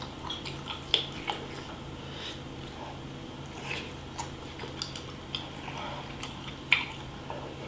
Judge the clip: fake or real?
real